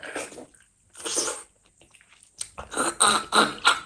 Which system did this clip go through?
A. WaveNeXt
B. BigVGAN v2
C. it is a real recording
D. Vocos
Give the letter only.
C